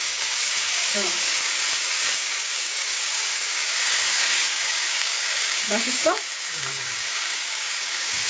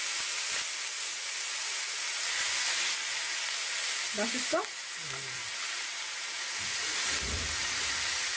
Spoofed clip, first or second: first